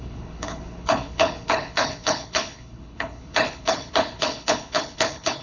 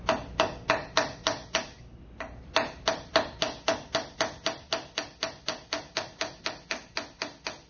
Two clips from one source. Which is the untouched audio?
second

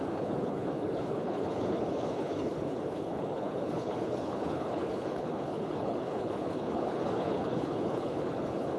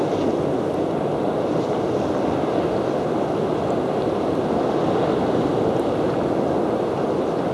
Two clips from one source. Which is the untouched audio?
second